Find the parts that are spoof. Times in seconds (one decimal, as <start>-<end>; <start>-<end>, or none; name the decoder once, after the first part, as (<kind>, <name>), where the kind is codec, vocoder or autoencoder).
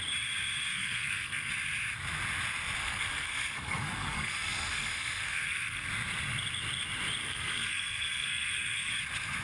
0.7-1.5 (codec, SNAC); 2.8-5.9; 7.2-8.9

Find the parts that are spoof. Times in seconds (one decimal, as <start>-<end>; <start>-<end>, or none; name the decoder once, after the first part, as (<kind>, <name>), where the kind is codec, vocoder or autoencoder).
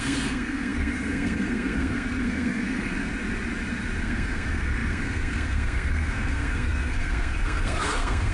0.0-3.1 (codec, SNAC); 4.0-8.3